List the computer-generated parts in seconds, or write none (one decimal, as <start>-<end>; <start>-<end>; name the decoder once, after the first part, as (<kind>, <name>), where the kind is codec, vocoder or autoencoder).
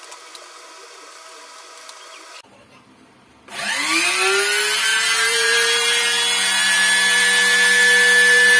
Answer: 4.9-6.0 (vocoder, BigVGAN v2)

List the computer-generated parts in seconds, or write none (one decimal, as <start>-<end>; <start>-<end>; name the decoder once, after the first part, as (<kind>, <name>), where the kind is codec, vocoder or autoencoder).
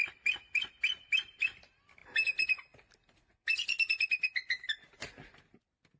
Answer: 0.0-2.0 (vocoder, BigVGAN v2); 5.6-6.0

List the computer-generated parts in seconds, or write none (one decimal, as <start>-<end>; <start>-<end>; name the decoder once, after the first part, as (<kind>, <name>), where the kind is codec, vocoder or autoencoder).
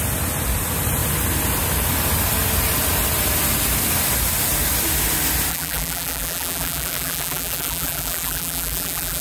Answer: 5.5-9.2 (vocoder, BigVGAN v2)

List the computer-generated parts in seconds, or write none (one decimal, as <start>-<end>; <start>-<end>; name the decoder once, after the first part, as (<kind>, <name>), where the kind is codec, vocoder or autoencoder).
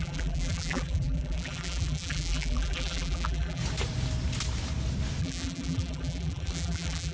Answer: 0.0-3.6 (vocoder, BigVGAN v2); 5.2-7.1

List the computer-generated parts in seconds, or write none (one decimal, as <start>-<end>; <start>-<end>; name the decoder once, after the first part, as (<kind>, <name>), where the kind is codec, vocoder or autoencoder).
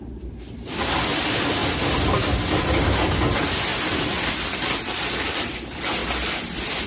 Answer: 0.0-6.0 (vocoder, BigVGAN v2)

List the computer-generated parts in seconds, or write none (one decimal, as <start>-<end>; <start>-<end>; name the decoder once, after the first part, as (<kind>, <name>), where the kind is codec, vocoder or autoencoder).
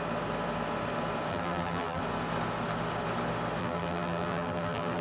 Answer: 1.3-2.0 (vocoder, BigVGAN v2); 3.6-5.0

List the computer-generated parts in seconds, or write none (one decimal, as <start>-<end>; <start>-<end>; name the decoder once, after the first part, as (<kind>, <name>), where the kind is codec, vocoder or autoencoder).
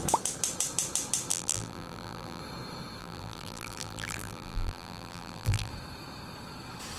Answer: 1.3-2.4 (vocoder, BigVGAN v2); 3.0-5.7